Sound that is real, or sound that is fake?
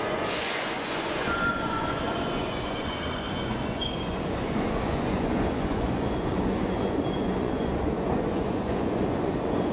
fake